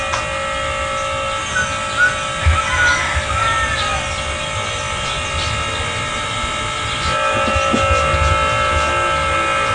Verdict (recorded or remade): recorded